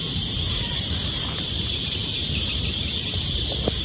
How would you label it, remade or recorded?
remade